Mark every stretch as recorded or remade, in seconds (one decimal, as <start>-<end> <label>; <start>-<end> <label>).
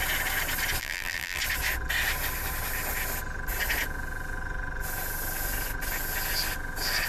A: 0.0-0.8 recorded; 0.8-1.4 remade; 1.4-7.1 recorded